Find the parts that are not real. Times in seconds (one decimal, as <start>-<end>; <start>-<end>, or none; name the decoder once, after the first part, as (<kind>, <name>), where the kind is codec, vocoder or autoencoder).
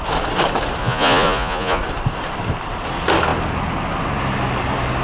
0.8-1.8 (vocoder, Vocos)